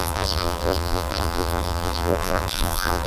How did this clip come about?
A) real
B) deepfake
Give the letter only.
B